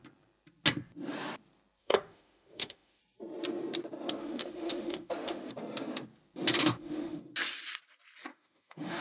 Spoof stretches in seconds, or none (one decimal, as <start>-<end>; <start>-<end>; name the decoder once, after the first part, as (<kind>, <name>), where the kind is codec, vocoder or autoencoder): 1.8-3.0 (autoencoder, DAC-VAE); 4.2-5.5; 6.6-7.2; 8.3-9.0